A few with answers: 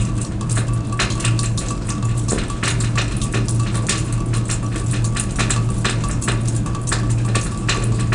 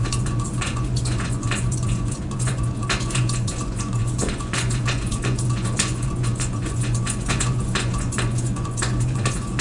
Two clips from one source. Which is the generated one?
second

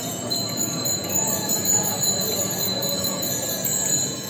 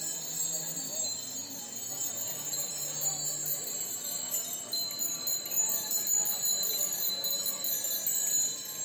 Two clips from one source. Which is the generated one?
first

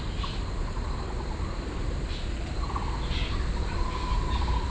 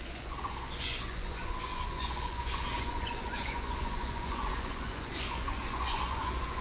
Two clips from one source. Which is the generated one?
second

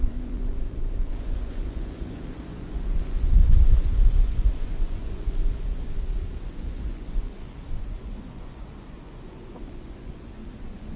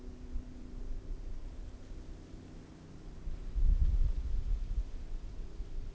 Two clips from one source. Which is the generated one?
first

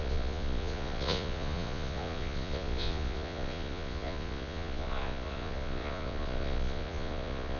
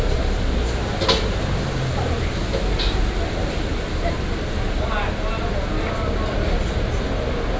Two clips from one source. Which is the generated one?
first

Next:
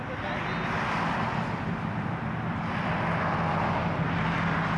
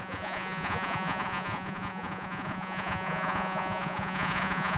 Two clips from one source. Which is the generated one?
second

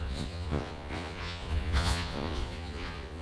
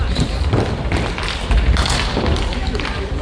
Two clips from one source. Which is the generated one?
first